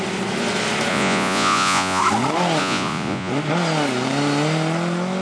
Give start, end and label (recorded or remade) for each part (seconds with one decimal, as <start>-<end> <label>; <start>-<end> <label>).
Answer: 0.0-0.9 recorded; 0.9-2.0 remade; 2.0-2.6 recorded; 2.6-3.3 remade; 3.3-5.2 recorded